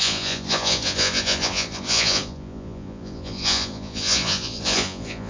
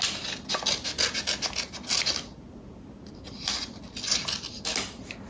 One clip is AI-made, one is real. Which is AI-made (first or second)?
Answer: first